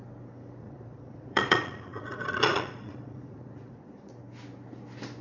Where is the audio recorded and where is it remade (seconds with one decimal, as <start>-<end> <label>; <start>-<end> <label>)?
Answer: 0.0-0.6 recorded; 0.6-4.1 remade; 4.1-5.2 recorded